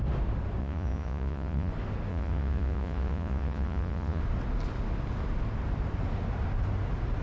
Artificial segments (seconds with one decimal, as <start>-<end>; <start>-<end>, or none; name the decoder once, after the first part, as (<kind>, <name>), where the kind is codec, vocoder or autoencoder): 0.6-1.7 (vocoder, Vocos); 2.1-4.2